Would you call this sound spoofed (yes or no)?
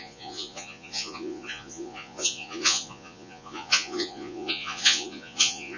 yes